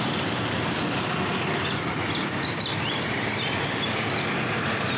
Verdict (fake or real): real